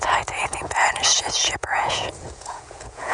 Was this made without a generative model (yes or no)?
no